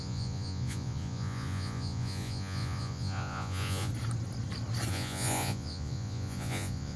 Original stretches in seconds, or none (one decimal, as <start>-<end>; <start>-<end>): 3.9-4.9